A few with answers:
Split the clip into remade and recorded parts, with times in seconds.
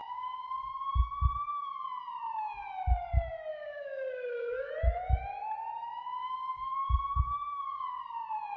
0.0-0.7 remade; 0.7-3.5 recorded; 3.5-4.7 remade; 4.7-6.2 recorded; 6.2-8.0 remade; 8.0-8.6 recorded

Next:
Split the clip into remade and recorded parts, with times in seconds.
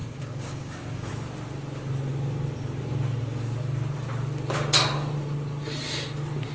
0.0-1.1 remade; 1.1-6.5 recorded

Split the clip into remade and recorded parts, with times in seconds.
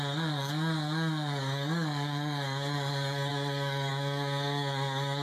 0.0-5.2 remade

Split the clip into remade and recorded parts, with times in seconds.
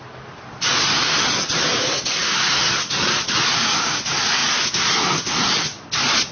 0.0-6.3 recorded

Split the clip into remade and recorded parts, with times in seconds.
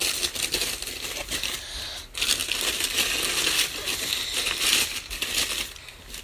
0.0-6.2 recorded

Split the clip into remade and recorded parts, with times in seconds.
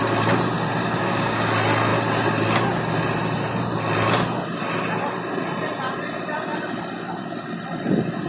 0.0-0.8 recorded; 0.8-1.4 remade; 1.4-8.3 recorded